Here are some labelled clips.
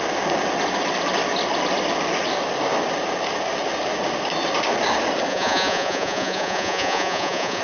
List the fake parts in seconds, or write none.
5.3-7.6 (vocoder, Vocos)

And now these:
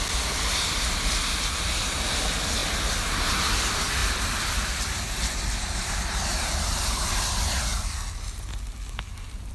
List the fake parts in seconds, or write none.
none

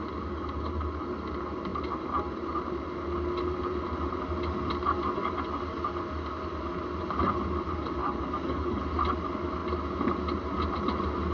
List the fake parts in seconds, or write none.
8.0-8.8 (codec, DAC)